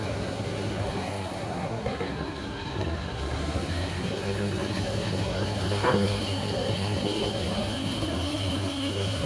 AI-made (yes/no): yes